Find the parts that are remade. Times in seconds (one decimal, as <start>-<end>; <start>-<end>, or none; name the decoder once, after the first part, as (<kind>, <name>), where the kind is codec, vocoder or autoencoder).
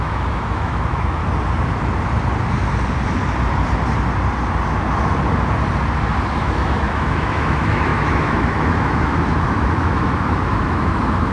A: 0.0-1.2 (autoencoder, DAC-VAE); 6.4-11.3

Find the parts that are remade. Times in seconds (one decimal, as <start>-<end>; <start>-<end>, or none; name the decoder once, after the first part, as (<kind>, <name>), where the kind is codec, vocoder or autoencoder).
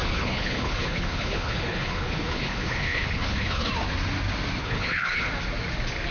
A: 0.0-3.7 (codec, HILCodec); 4.6-5.3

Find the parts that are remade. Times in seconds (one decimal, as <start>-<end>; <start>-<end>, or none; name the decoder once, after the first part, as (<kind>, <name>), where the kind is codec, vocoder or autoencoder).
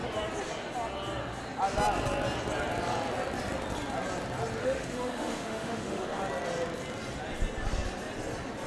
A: 4.6-6.2 (autoencoder, DAC-VAE)